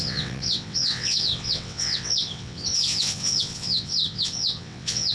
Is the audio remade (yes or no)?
yes